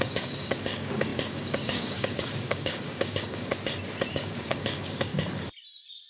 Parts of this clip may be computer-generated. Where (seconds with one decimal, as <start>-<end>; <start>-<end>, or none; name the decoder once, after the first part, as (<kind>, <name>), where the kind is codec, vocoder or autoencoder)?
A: 0.0-3.5 (codec, DAC); 4.1-5.1